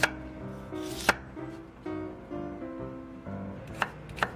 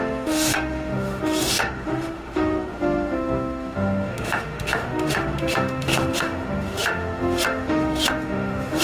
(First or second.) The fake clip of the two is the second